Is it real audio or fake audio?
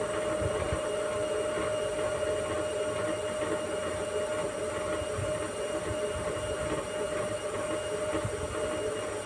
real